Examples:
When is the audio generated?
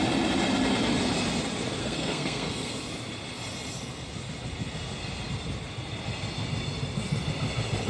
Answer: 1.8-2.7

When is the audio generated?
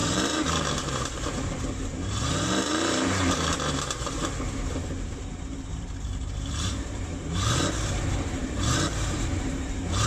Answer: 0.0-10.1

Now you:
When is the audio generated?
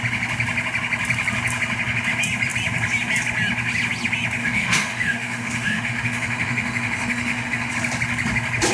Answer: 4.4-7.7